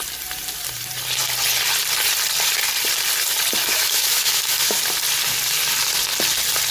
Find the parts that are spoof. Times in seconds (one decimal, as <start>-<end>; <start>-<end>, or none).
3.6-4.8